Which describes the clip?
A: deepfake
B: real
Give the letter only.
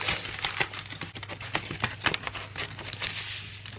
B